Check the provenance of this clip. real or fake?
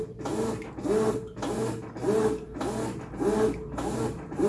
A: real